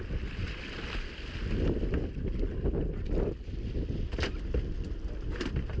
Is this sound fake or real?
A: real